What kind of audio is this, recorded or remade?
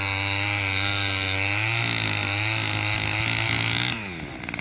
recorded